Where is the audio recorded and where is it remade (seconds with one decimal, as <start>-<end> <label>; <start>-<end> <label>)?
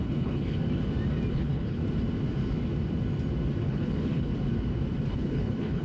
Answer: 0.0-0.6 remade; 0.6-1.3 recorded; 1.3-1.8 remade; 1.8-3.6 recorded; 3.6-4.3 remade; 4.3-5.1 recorded; 5.1-5.8 remade